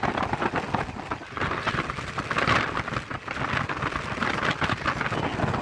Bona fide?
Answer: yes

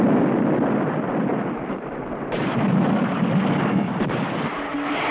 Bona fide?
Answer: yes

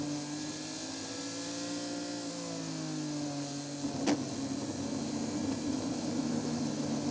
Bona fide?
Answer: yes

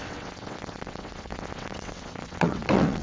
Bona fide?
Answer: no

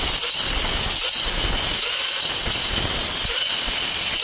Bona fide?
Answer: yes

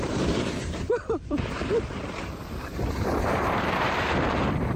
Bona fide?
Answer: no